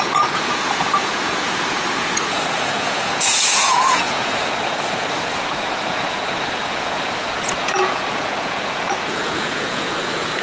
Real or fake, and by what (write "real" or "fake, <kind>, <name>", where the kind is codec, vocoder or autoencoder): fake, vocoder, Vocos